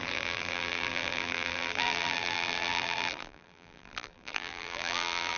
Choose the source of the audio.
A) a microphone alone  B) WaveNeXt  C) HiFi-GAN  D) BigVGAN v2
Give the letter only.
D